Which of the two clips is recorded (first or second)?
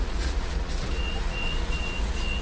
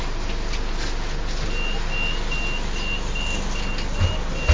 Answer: second